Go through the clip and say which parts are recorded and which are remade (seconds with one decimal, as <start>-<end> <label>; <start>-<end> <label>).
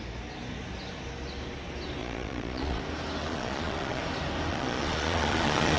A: 0.0-2.0 recorded; 2.0-2.8 remade; 2.8-3.2 recorded; 3.2-4.0 remade; 4.0-4.5 recorded; 4.5-5.8 remade